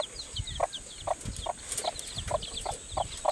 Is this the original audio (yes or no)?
yes